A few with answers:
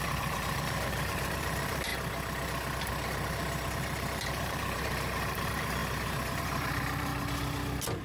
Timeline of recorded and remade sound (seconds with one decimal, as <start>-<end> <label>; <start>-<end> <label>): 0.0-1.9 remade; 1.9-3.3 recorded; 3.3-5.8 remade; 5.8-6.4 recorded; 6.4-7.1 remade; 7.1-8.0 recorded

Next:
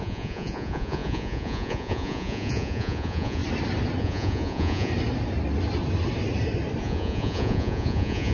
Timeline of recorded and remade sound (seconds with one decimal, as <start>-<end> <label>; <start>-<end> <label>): 0.0-3.4 remade; 3.4-4.0 recorded; 4.0-4.9 remade; 4.9-6.8 recorded; 6.8-8.3 remade

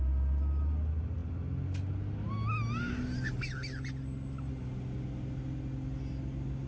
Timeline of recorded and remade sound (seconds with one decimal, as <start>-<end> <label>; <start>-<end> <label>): 0.0-6.7 recorded